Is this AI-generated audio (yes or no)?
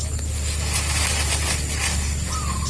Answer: no